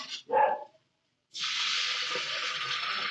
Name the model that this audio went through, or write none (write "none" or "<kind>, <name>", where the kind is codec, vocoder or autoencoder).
none